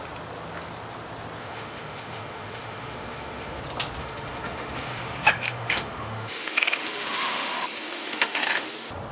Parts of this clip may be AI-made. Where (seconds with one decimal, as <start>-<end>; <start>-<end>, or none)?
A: 1.4-3.6; 4.0-8.7